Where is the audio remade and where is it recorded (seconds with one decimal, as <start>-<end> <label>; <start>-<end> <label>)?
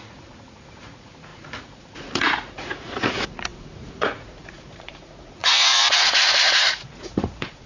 0.0-7.7 remade